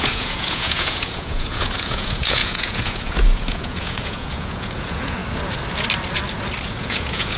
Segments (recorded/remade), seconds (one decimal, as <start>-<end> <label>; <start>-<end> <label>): 0.0-5.2 remade; 5.2-6.7 recorded; 6.7-7.4 remade